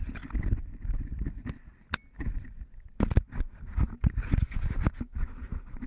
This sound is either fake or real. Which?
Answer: real